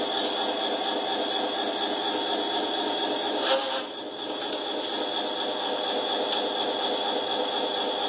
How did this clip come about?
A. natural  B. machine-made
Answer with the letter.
A